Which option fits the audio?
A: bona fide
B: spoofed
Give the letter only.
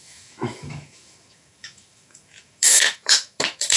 B